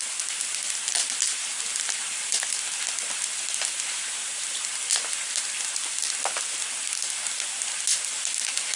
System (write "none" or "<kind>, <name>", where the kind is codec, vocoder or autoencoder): none